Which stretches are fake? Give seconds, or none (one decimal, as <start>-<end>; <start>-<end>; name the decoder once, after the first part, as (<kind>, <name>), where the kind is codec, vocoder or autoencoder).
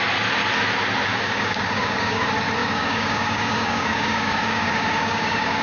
1.1-2.2 (codec, DAC); 2.6-5.6